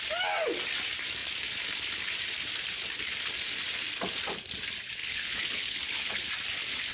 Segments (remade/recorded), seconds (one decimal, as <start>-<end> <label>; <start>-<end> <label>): 0.0-5.0 recorded; 5.0-6.3 remade; 6.3-6.9 recorded